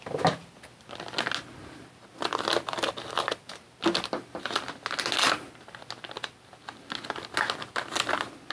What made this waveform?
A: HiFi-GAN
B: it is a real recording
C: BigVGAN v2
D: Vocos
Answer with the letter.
B